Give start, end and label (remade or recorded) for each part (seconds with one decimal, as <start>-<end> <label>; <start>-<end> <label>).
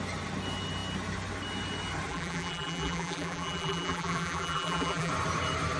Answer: 0.0-2.1 recorded; 2.1-5.1 remade; 5.1-5.8 recorded